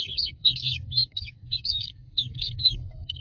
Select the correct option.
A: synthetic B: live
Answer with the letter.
A